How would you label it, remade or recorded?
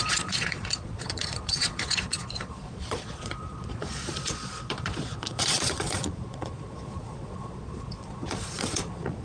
remade